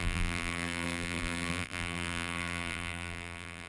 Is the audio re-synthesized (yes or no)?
yes